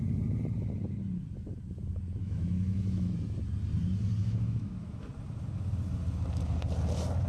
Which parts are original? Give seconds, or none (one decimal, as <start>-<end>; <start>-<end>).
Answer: 0.0-2.2; 3.1-4.2; 5.1-7.3